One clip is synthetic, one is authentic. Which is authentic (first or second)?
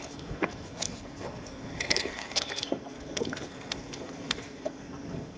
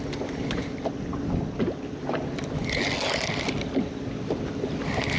second